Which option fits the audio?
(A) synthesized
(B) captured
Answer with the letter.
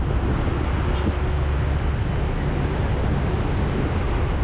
B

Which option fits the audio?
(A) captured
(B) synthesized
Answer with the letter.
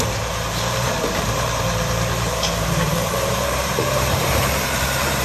B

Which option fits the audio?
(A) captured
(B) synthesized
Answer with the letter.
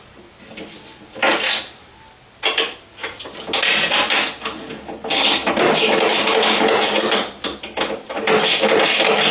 A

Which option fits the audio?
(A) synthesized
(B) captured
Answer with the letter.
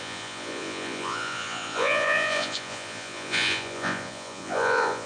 A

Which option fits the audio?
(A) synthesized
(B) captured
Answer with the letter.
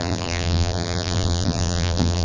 A